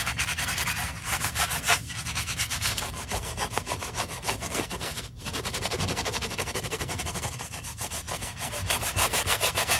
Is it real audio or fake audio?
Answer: fake